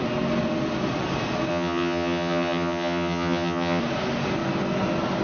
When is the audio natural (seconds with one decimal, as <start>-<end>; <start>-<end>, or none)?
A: 0.0-1.5; 3.8-5.2